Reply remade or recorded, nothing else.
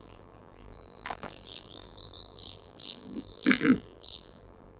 remade